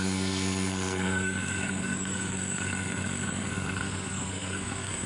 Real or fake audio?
fake